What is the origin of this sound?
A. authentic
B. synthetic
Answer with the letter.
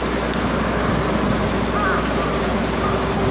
A